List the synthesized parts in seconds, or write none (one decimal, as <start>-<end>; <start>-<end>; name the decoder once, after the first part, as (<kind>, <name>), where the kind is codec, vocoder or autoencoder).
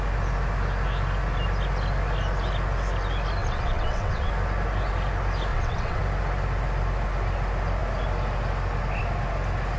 3.4-4.3 (vocoder, WaveNeXt); 5.5-6.0